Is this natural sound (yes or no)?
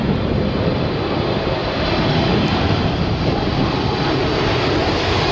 no